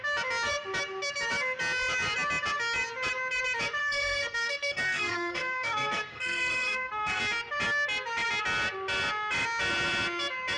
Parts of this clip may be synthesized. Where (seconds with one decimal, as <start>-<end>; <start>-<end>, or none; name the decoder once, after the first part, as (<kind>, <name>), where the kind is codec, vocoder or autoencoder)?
3.8-7.2 (codec, SNAC)